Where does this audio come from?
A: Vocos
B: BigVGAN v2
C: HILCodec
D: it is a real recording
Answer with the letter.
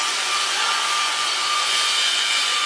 A